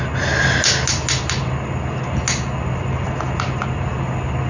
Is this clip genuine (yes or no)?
yes